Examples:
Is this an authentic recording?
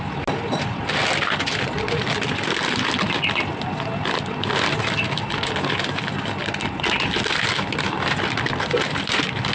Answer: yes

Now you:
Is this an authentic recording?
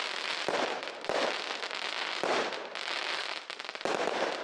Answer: yes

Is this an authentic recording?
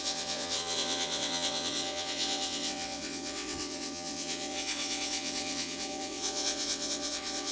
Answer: no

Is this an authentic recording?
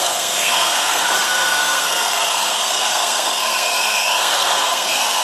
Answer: no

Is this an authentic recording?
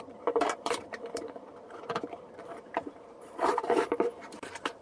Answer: no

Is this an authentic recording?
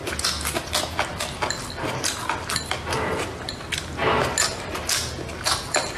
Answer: yes